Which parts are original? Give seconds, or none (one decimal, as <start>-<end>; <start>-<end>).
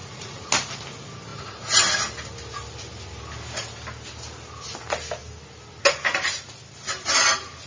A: 0.5-7.7